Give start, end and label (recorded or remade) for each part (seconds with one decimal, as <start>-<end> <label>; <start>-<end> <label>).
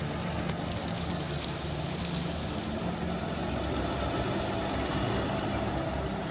0.0-6.3 recorded